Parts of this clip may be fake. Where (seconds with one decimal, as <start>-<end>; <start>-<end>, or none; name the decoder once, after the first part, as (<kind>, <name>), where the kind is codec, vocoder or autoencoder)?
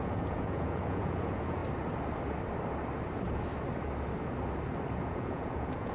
0.0-1.6 (vocoder, Vocos); 5.1-5.9